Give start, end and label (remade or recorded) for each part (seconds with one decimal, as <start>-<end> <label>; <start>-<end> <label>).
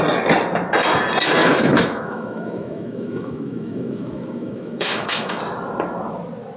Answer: 0.0-1.4 recorded; 1.4-5.4 remade; 5.4-6.6 recorded